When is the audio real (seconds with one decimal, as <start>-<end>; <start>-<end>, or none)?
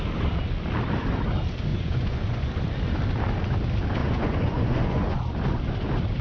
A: 0.0-1.7; 2.5-4.0; 5.2-6.2